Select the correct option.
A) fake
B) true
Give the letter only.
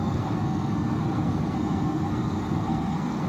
A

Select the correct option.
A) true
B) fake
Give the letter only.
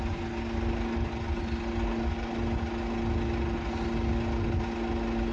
A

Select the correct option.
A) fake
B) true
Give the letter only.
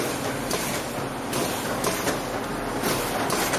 B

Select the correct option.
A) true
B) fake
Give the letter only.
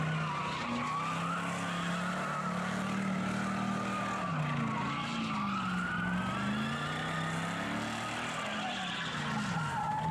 A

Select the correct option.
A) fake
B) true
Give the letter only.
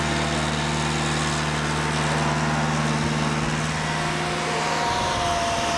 B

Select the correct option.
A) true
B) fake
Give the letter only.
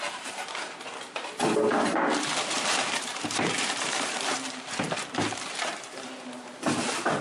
B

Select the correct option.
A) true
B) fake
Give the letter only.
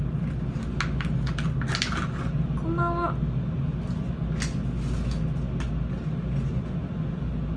A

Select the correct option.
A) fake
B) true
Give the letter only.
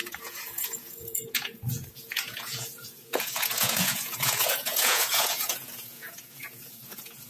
A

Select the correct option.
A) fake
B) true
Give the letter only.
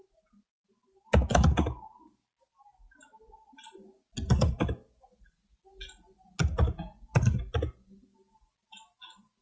B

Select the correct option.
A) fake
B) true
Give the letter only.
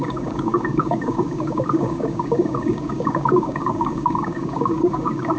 A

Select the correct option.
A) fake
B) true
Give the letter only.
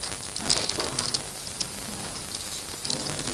B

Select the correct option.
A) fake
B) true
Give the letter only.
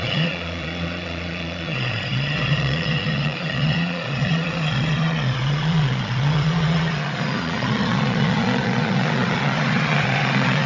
A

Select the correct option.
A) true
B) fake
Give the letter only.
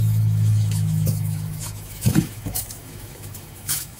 B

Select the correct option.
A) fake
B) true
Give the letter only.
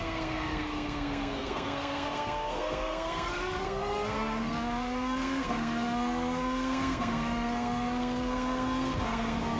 A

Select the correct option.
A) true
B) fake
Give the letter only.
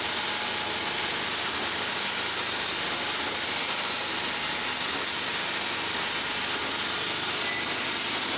A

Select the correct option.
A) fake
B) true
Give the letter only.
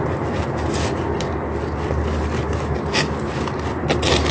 B